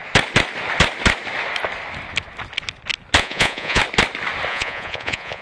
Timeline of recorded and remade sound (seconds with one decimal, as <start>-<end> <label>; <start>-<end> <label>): 0.0-3.2 recorded; 3.2-3.8 remade; 3.8-4.5 recorded; 4.5-5.4 remade